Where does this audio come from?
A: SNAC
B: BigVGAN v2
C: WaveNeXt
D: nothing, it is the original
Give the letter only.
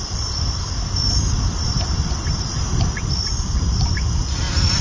B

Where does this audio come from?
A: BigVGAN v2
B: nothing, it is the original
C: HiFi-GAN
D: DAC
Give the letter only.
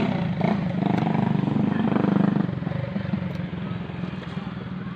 B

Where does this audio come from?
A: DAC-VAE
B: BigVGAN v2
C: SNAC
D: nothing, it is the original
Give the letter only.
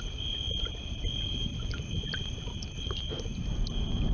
B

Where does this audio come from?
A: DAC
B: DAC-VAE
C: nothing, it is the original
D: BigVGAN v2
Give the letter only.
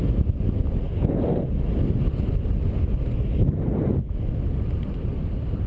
C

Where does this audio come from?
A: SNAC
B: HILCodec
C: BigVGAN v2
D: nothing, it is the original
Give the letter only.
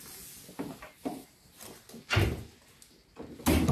D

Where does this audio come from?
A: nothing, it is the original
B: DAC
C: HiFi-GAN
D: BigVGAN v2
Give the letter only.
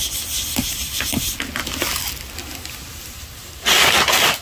A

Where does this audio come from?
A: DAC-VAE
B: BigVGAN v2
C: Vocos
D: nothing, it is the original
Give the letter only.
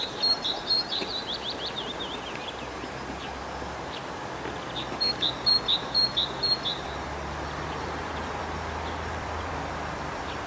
B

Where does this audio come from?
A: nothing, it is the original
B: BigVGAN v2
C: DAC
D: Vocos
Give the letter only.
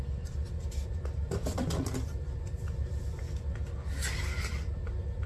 B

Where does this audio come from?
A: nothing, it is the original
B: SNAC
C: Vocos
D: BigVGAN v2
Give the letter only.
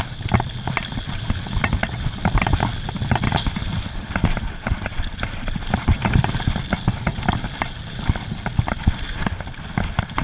A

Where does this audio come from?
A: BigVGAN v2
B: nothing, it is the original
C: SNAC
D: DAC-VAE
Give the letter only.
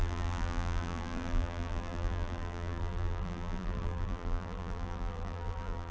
A